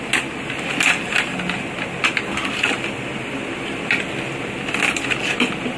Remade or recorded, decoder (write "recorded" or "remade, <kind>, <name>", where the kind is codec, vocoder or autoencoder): recorded